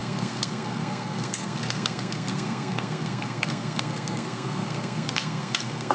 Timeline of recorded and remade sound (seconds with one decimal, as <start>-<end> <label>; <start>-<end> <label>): 0.0-5.9 remade